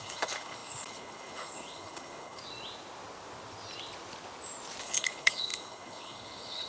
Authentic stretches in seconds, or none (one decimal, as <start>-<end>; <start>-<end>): 2.4-4.8